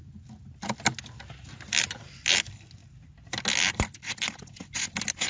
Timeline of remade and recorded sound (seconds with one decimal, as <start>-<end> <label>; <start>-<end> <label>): 0.0-5.3 recorded